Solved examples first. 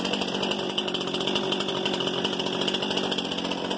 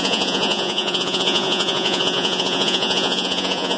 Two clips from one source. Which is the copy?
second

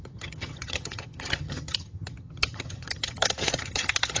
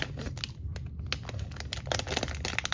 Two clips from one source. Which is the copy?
first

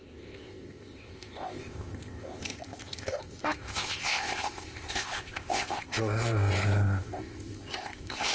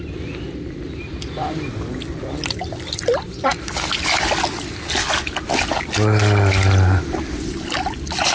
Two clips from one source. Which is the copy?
first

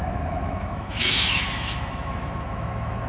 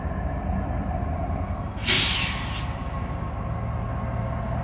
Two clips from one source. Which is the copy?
first